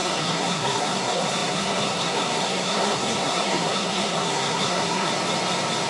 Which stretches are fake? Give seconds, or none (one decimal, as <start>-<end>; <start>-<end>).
0.0-5.1